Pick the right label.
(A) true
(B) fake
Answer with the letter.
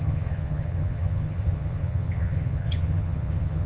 B